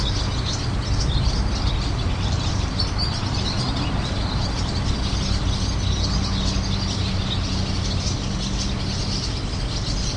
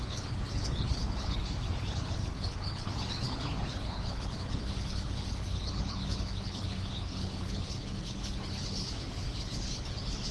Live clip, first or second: first